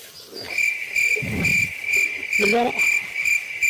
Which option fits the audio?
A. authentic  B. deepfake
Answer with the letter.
A